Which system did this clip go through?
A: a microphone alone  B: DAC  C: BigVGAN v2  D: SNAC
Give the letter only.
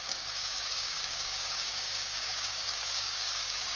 B